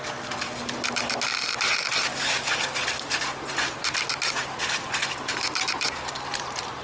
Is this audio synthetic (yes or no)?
no